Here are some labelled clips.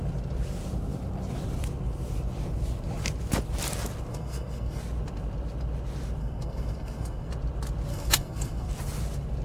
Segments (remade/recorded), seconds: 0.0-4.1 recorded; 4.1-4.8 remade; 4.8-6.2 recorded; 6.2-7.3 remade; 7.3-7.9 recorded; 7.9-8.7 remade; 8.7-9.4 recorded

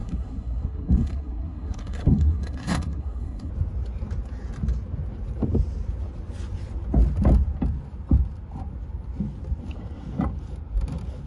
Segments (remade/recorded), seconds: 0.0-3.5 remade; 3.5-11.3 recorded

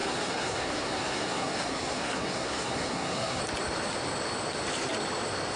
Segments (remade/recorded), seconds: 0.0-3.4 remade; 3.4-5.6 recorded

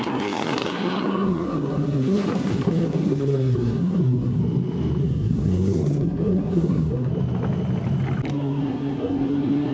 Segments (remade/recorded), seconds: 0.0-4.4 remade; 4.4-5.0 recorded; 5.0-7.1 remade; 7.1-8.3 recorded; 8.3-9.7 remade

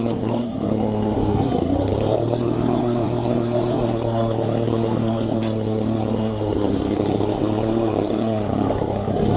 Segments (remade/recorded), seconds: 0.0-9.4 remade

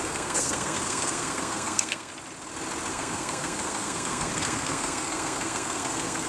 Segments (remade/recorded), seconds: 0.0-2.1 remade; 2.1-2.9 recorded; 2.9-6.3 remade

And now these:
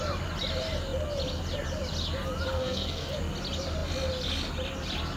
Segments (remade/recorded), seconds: 0.0-2.5 recorded; 2.5-3.2 remade; 3.2-5.2 recorded

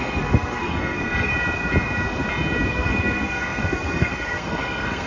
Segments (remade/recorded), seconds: 0.0-1.3 remade; 1.3-2.7 recorded; 2.7-5.1 remade